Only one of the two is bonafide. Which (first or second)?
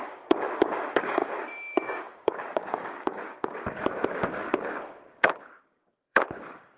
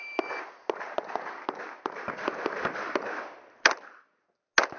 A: second